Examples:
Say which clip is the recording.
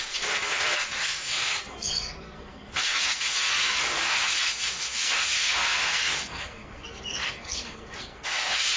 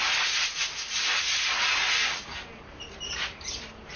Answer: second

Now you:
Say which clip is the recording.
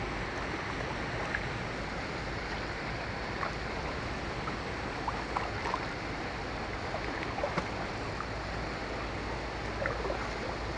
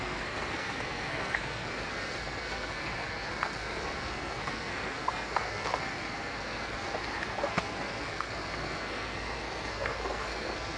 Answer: first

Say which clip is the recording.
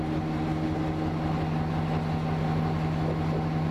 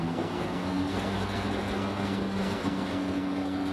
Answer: first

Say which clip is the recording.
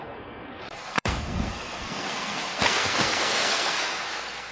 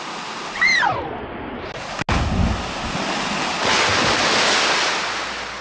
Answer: second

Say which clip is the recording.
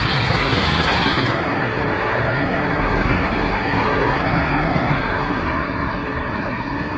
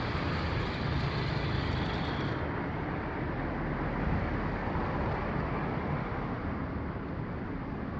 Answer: second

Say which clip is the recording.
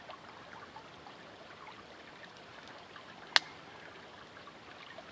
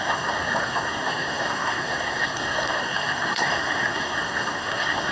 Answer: first